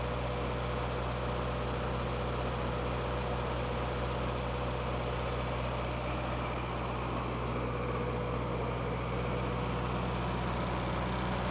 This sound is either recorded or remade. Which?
recorded